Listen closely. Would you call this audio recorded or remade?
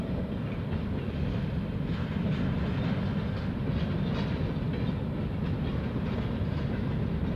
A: recorded